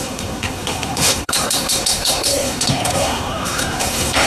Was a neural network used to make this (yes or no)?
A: yes